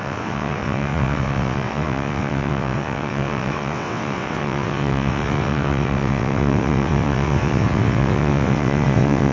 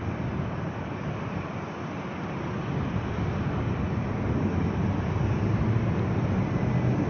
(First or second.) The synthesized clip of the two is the first